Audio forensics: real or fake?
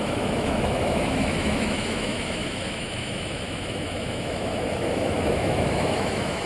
fake